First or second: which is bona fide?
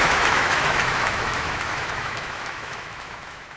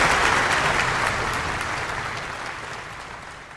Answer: second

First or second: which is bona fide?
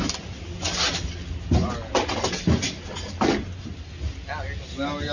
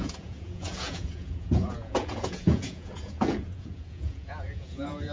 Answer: first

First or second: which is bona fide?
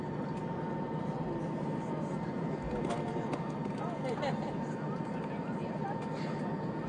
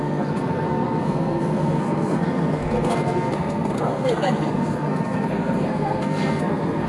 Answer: first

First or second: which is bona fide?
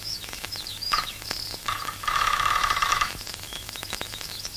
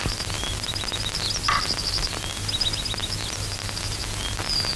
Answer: second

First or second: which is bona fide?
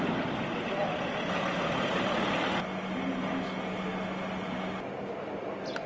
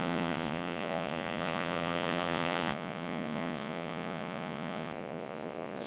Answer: first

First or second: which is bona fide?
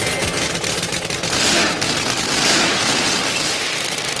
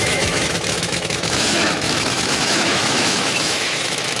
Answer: first